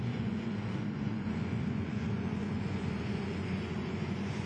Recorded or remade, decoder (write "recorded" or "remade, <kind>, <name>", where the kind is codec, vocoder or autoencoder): remade, vocoder, Vocos